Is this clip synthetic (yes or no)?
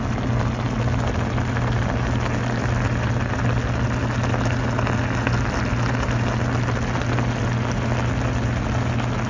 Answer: no